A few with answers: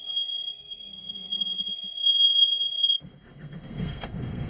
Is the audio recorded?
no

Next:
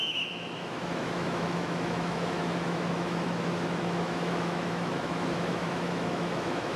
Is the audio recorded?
no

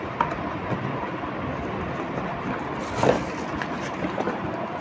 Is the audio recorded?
yes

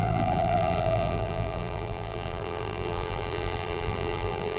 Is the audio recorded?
no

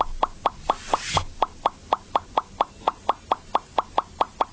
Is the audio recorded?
yes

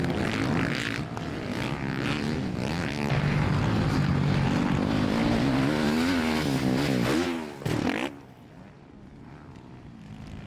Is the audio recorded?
yes